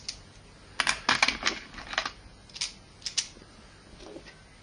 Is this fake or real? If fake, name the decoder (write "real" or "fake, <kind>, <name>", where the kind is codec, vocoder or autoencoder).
real